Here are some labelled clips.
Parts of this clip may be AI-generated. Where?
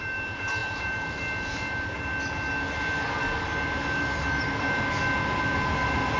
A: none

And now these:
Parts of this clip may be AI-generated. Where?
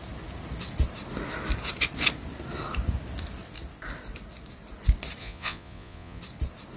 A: 5.2-6.2 (vocoder, Vocos)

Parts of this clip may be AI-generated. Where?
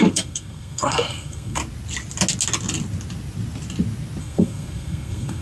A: 0.0-1.6 (codec, SNAC); 4.2-5.4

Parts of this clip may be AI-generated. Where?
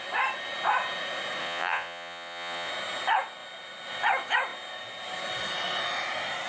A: 1.4-2.7 (vocoder, Vocos)